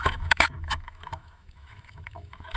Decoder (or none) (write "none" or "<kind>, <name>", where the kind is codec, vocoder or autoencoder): autoencoder, DAC-VAE